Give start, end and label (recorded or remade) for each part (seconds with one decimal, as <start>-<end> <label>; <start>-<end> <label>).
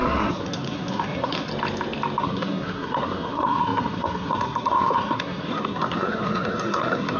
0.0-1.5 remade; 1.5-2.2 recorded; 2.2-7.2 remade